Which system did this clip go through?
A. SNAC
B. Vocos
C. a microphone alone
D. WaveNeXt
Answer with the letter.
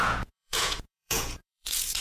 B